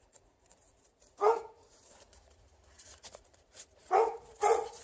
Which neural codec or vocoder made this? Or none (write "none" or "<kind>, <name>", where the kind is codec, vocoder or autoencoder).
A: vocoder, Vocos